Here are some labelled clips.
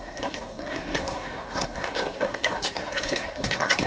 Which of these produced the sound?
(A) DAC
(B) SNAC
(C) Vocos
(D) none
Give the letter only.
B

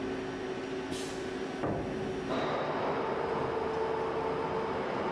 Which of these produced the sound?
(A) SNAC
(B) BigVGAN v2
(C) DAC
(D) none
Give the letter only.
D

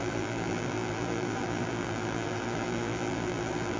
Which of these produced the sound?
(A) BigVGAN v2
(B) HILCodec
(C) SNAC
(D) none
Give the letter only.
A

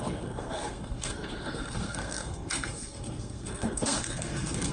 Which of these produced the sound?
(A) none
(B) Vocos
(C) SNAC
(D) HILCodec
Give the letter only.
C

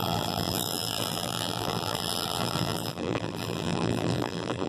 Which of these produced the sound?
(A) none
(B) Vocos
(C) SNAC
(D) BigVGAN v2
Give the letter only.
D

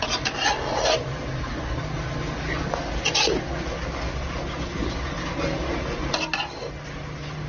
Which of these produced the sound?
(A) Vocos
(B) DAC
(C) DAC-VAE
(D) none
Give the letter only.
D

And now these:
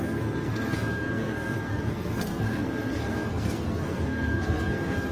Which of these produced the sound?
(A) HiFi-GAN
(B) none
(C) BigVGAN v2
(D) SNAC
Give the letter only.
D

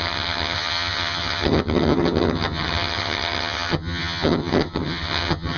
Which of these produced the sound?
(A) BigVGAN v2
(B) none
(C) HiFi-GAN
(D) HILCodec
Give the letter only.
C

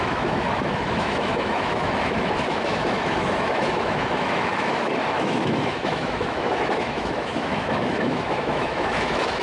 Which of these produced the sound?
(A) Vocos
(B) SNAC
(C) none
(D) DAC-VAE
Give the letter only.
D